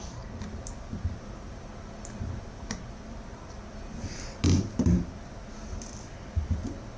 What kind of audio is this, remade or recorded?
recorded